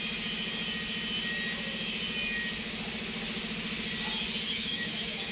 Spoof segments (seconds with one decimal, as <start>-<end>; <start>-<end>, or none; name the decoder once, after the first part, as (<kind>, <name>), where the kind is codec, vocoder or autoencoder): 4.5-5.3 (autoencoder, DAC-VAE)